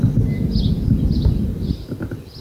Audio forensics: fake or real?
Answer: real